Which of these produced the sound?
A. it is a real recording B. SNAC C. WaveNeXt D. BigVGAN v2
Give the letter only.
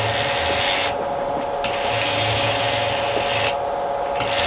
A